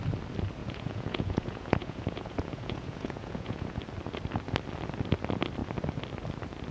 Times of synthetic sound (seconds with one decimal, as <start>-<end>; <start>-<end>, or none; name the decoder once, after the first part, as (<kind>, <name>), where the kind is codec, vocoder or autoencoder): 0.6-3.8 (vocoder, Vocos)